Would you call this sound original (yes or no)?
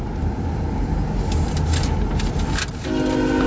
yes